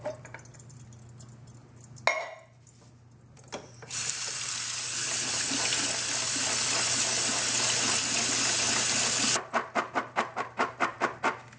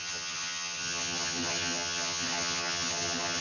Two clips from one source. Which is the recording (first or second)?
first